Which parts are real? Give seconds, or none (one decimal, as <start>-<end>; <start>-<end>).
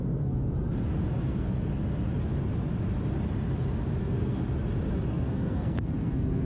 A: 0.4-1.2; 1.7-4.0; 4.4-5.1